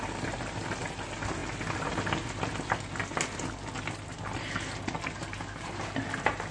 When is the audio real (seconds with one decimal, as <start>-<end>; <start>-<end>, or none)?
0.0-6.5